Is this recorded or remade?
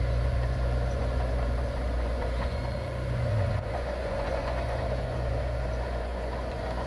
remade